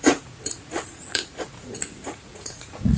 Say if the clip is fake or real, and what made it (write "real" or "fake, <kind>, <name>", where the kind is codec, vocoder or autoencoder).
fake, vocoder, Vocos